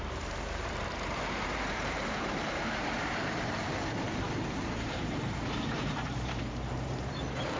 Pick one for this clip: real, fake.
fake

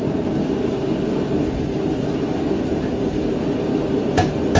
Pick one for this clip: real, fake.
real